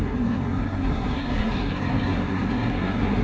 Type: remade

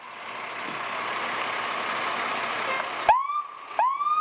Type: recorded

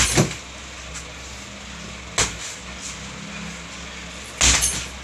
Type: recorded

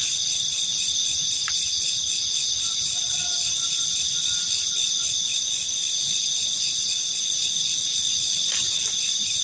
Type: recorded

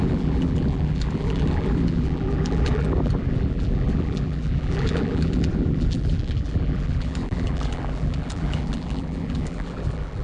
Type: remade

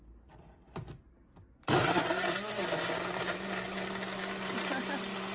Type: recorded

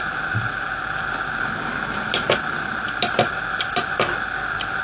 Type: recorded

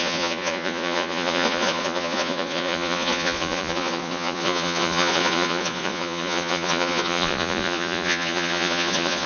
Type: remade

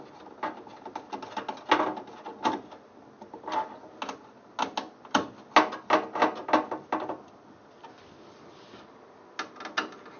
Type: recorded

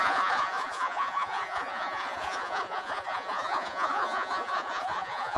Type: remade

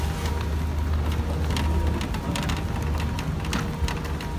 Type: recorded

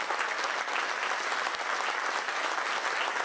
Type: recorded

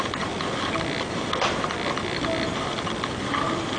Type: recorded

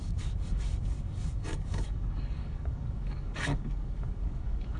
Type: remade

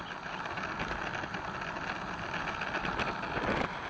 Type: recorded